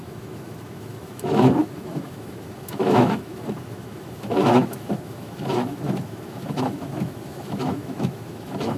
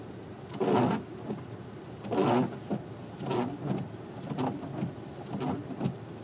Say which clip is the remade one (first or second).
first